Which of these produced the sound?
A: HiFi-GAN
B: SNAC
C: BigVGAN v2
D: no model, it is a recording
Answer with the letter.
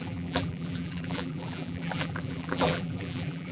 C